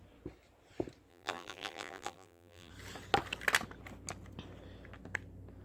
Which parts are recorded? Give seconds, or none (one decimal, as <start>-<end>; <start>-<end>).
0.0-1.1; 2.7-5.6